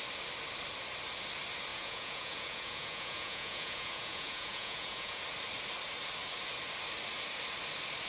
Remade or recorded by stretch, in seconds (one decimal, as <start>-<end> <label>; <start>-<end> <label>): 0.0-1.7 recorded; 1.7-5.2 remade; 5.2-8.1 recorded